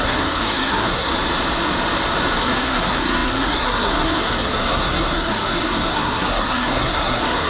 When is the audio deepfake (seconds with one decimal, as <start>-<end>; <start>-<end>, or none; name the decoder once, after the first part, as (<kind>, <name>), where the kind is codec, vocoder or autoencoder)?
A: 0.0-1.1 (codec, SNAC); 2.4-7.5

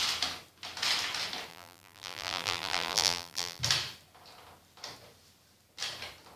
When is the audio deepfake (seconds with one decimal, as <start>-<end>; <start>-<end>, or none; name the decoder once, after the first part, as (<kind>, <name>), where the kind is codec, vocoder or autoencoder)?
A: 1.5-3.6 (vocoder, BigVGAN v2)

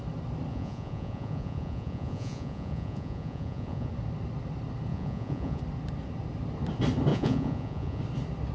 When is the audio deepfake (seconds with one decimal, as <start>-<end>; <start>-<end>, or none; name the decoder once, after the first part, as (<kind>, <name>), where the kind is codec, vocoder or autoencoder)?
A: 0.5-3.9 (vocoder, Vocos); 4.9-5.6; 7.1-8.0